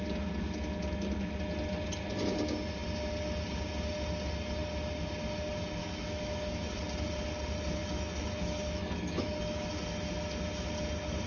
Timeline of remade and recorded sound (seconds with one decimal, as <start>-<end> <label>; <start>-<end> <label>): 0.0-5.8 recorded; 5.8-6.8 remade; 6.8-7.8 recorded; 7.8-9.7 remade; 9.7-11.3 recorded